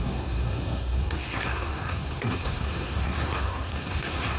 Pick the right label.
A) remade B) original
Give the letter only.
A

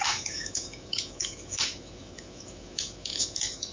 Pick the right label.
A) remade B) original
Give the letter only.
A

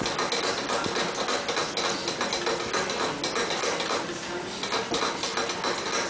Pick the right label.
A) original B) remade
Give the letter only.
A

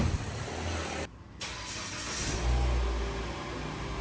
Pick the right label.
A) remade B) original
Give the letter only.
B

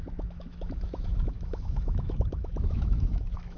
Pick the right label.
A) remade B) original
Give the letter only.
A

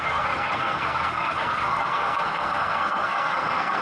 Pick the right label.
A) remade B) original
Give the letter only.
A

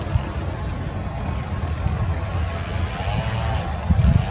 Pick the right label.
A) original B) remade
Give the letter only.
A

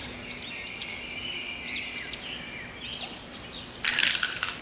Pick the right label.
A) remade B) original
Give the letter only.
B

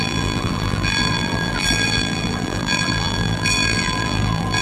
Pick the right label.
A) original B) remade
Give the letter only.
B